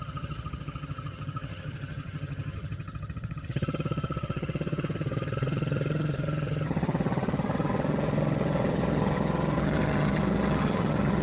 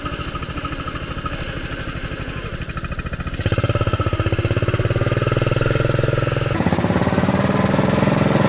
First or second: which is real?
second